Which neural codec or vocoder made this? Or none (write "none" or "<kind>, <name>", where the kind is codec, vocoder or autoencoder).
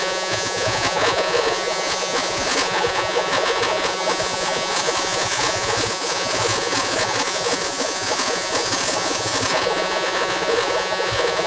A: vocoder, Vocos